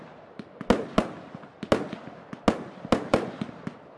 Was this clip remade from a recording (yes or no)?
no